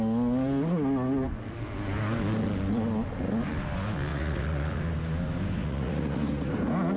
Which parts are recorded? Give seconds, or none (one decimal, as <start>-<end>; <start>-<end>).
0.0-4.1; 4.8-5.6; 6.5-7.0